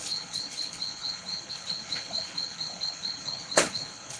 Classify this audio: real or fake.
fake